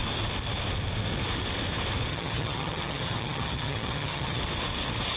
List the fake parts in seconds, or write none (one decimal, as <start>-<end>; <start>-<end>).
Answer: 2.1-4.4